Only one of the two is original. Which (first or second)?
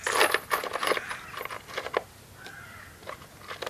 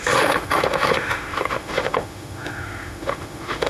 first